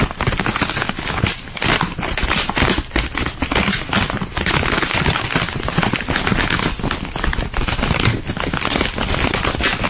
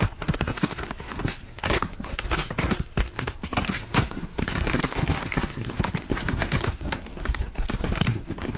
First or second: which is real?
first